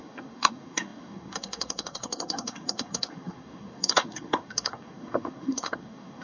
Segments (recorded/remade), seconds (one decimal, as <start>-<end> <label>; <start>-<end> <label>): 0.0-6.2 remade